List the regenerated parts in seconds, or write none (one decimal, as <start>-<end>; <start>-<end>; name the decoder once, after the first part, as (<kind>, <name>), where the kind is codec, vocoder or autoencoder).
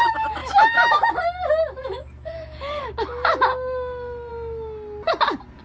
0.4-1.1 (autoencoder, DAC-VAE); 1.8-2.8